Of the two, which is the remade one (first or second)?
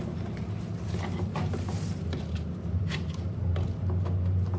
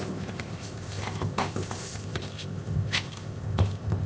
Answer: second